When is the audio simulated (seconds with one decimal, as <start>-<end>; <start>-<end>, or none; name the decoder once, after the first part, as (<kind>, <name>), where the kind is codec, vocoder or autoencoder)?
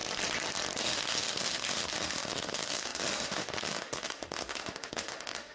0.8-5.5 (autoencoder, DAC-VAE)